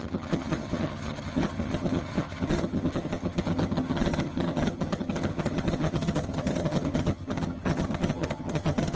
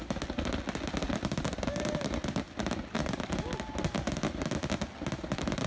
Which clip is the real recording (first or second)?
second